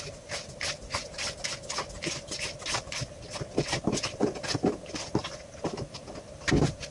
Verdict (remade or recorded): recorded